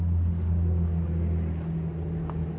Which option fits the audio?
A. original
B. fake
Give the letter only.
A